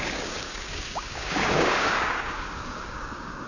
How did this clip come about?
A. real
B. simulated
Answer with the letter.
B